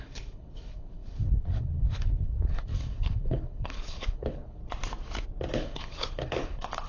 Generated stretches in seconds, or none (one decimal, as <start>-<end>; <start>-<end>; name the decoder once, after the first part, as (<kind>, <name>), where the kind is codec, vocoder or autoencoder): 0.0-4.6 (codec, HILCodec); 5.5-6.9